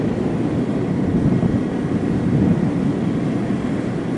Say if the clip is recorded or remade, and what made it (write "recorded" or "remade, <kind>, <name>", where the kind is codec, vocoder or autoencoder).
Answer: recorded